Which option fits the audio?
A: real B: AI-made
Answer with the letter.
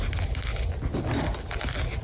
A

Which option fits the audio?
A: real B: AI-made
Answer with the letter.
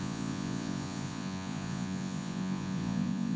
B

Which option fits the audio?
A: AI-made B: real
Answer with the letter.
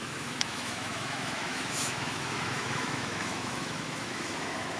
A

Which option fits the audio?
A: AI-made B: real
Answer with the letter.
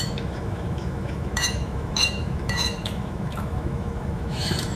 A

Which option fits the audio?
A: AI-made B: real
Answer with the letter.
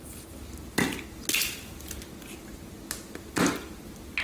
B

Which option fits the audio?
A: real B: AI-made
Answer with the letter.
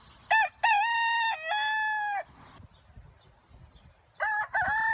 A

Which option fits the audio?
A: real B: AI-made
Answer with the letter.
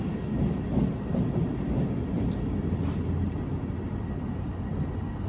A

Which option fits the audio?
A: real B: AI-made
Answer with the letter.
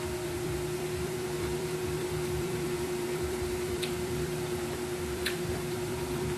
B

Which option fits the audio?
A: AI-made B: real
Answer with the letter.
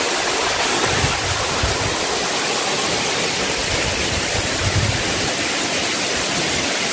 B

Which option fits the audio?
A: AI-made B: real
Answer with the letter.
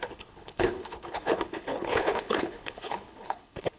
A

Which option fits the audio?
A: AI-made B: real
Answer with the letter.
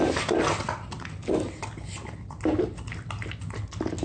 B